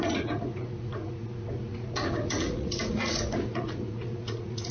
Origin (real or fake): fake